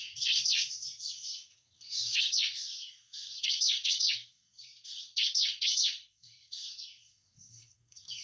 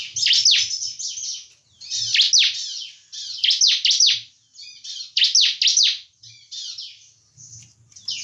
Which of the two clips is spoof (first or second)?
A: first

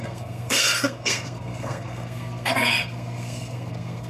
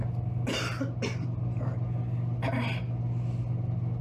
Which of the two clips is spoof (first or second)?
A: first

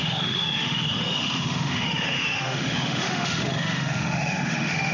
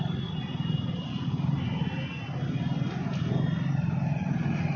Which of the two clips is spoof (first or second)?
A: first